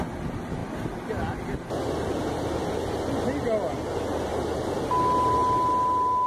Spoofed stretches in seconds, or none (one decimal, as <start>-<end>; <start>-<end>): none